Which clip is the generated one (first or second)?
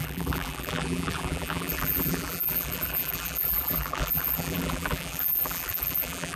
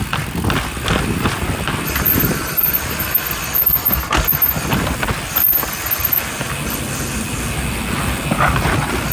first